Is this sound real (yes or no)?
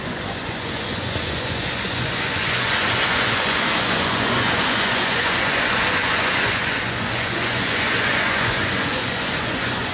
no